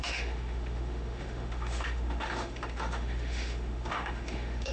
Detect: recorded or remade remade